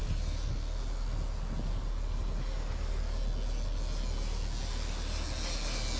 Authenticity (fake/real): real